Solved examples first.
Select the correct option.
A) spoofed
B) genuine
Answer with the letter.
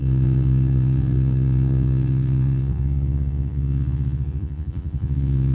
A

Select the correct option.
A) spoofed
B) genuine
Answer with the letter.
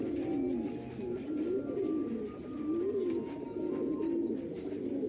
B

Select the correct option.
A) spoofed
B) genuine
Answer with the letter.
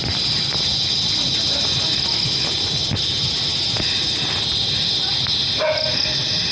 B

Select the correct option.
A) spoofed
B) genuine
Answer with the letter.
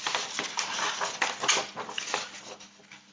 B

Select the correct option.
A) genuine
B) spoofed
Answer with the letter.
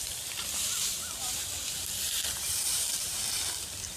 A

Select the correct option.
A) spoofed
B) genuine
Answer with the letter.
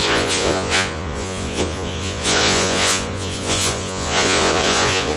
A